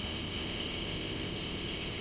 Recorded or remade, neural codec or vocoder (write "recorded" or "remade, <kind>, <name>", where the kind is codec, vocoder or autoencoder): remade, codec, ZipCodec